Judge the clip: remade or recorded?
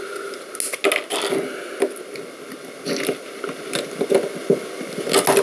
recorded